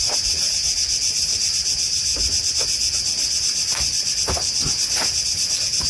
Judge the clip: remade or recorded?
recorded